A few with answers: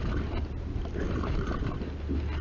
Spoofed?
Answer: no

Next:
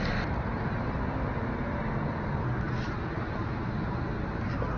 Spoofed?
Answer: no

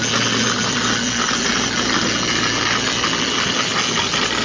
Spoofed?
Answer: no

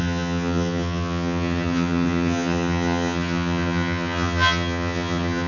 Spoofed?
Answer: yes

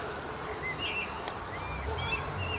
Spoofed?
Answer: no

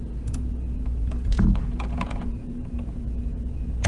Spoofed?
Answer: yes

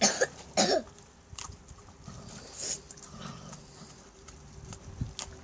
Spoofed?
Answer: no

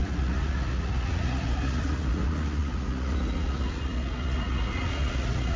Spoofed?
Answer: yes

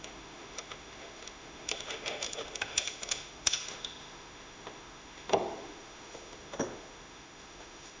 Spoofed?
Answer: yes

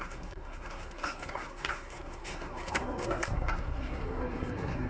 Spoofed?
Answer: yes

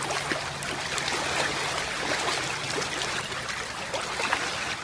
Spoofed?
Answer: no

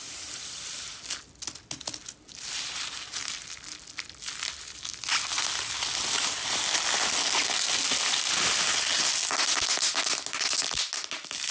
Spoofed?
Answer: no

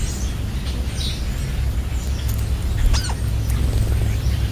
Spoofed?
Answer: no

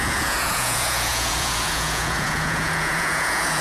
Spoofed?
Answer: yes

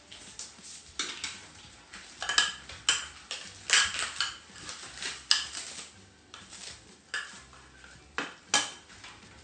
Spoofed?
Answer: no